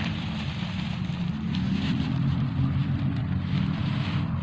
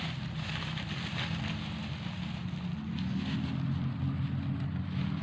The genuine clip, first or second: second